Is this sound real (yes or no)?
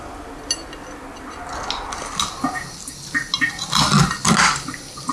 yes